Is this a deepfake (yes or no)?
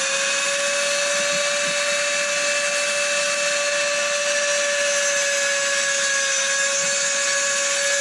no